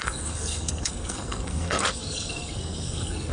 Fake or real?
fake